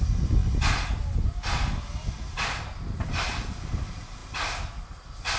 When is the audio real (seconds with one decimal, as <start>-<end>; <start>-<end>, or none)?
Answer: 0.0-5.4